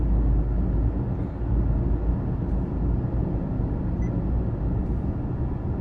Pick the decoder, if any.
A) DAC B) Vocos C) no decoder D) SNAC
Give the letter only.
C